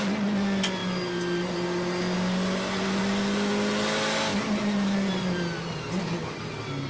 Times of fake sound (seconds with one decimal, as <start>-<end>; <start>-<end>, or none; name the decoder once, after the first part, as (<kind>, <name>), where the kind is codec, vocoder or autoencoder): 4.3-6.0 (vocoder, BigVGAN v2)